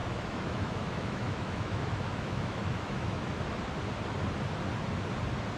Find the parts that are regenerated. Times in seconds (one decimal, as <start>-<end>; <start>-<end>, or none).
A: 0.0-3.4